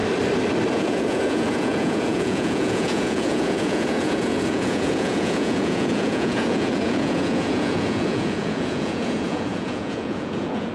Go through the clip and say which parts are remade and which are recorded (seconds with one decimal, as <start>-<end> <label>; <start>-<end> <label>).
0.0-0.7 recorded; 0.7-10.7 remade